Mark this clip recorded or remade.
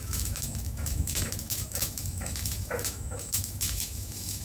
remade